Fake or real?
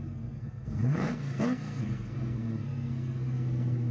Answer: fake